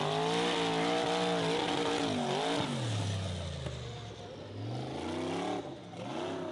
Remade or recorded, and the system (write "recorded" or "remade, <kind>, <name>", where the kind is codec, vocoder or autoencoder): recorded